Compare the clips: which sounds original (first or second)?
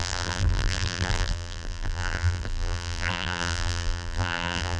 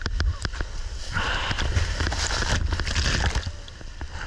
second